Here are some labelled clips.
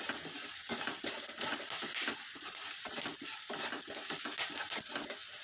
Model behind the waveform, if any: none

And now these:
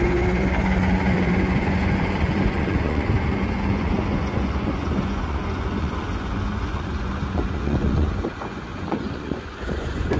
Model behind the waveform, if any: vocoder, Vocos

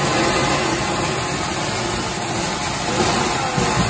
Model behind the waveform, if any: none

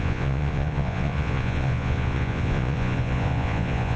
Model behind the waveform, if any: vocoder, Vocos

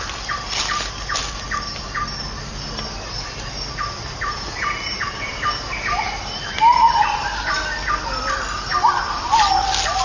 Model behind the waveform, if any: none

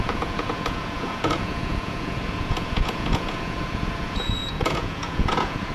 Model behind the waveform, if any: vocoder, Vocos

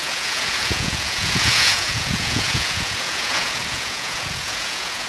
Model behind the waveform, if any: vocoder, Vocos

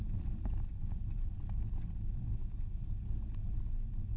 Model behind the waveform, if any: none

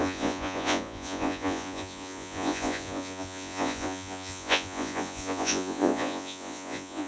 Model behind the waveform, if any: vocoder, Vocos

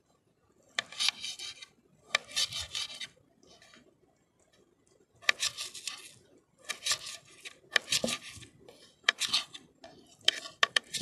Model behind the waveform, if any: none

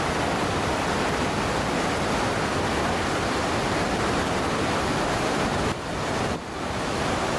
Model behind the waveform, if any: none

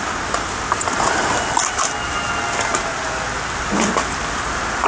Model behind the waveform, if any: none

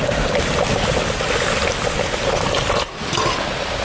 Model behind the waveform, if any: none